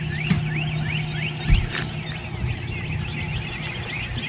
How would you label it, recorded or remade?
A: recorded